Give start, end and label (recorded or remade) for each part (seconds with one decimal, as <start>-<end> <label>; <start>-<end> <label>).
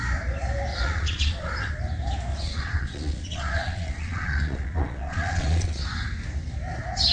0.0-0.7 recorded; 0.7-1.7 remade; 1.7-2.3 recorded; 2.3-5.8 remade; 5.8-7.1 recorded